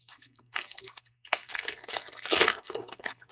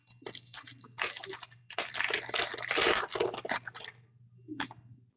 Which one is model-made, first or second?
first